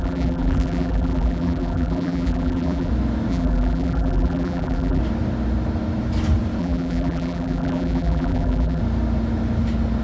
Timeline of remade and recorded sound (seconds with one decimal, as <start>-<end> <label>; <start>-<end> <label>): 0.0-2.9 remade; 2.9-3.3 recorded; 3.3-5.0 remade; 5.0-6.6 recorded; 6.6-8.8 remade; 8.8-10.0 recorded